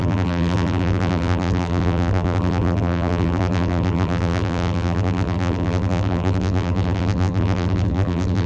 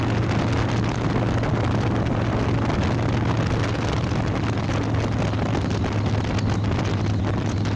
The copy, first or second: first